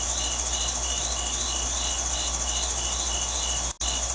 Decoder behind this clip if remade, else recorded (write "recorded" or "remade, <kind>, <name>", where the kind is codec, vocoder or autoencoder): recorded